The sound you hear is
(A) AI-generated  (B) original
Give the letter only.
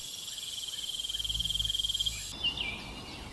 B